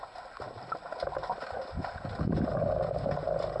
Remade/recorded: recorded